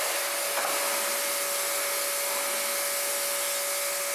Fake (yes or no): no